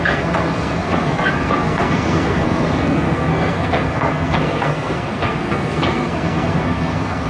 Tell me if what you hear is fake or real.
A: fake